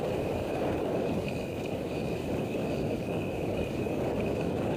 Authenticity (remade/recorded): remade